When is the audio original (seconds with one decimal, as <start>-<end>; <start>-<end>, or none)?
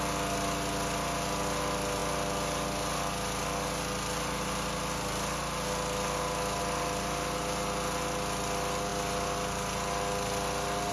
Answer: 0.0-10.9